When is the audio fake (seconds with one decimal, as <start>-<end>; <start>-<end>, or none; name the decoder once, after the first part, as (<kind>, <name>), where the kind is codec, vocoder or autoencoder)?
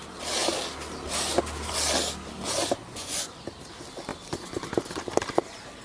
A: 2.8-3.3 (vocoder, Vocos)